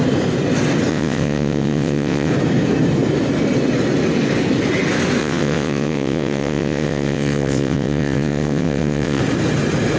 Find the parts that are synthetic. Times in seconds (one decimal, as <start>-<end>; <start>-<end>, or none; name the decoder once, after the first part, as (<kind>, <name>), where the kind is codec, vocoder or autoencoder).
0.9-2.3 (vocoder, WaveNeXt); 5.2-9.2